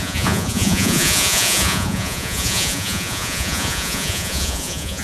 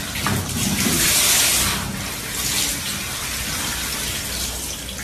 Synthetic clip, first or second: first